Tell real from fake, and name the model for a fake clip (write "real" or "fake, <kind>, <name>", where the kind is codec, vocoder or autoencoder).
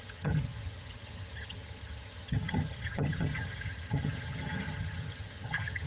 fake, vocoder, HiFi-GAN